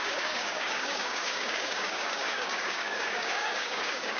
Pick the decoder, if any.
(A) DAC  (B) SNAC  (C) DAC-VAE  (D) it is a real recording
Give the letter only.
A